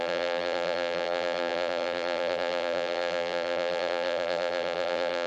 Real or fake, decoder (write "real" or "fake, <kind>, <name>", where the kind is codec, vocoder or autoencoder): fake, vocoder, BigVGAN v2